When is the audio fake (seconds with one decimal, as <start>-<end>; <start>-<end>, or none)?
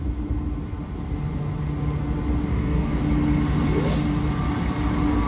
2.5-3.0